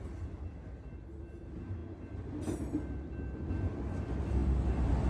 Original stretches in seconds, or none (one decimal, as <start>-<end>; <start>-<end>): 0.0-5.1